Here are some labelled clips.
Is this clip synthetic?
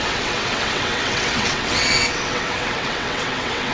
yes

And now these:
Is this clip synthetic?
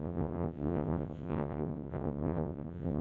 yes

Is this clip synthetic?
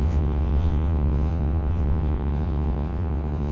yes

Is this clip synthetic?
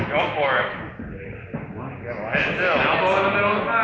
no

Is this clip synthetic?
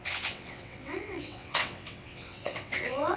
yes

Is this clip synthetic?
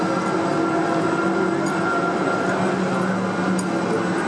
no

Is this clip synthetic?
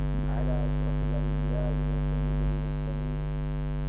no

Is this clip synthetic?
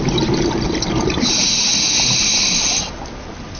no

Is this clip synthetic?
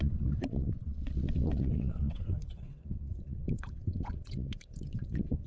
yes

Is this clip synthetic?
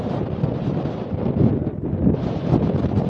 no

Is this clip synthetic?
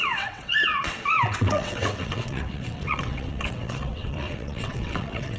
yes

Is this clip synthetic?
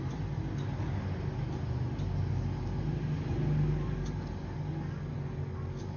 no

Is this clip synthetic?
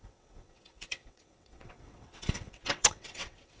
yes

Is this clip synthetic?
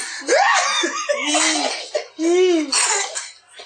no